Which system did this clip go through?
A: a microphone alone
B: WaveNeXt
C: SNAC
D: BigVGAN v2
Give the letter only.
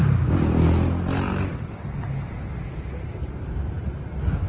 A